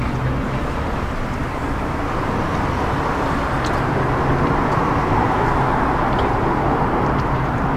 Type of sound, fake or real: real